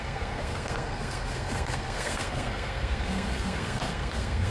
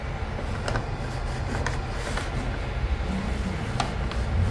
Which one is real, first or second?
second